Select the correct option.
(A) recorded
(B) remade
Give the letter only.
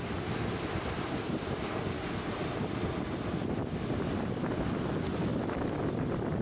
B